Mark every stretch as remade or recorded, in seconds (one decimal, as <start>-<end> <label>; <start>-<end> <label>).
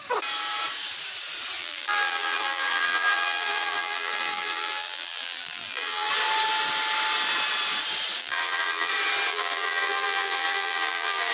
0.0-1.6 recorded; 1.6-6.1 remade; 6.1-8.2 recorded; 8.2-8.9 remade; 8.9-9.3 recorded; 9.3-11.3 remade